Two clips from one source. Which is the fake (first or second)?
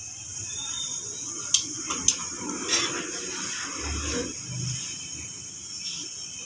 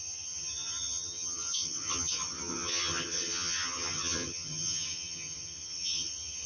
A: second